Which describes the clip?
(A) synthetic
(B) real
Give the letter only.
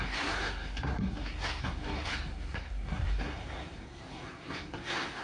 A